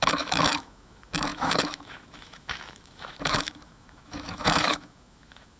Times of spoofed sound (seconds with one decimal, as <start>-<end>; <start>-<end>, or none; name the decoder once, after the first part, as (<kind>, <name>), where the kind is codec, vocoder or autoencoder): 0.0-5.6 (autoencoder, DAC-VAE)